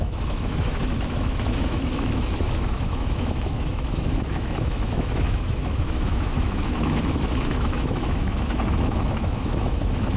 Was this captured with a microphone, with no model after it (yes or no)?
no